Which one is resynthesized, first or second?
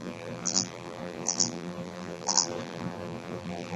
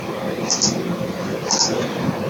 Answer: first